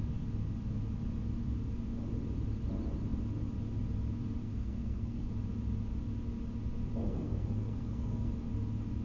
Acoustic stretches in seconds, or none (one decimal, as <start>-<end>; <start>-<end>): 0.0-4.4; 5.3-7.0; 8.3-9.0